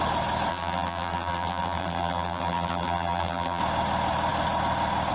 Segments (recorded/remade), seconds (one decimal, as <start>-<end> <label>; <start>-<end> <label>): 0.0-0.5 recorded; 0.5-3.6 remade; 3.6-5.1 recorded